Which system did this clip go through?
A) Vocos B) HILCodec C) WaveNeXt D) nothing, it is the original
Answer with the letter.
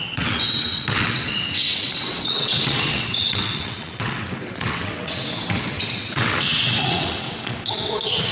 C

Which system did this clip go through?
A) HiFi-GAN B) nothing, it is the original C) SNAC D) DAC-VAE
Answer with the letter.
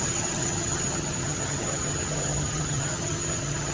A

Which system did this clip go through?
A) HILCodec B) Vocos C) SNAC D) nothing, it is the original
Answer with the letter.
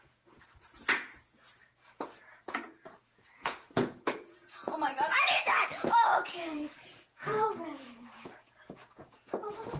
B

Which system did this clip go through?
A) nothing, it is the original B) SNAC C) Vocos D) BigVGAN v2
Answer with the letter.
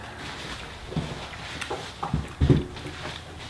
A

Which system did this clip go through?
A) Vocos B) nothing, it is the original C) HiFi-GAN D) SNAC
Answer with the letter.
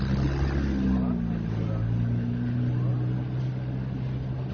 B